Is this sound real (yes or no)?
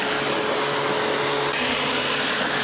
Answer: yes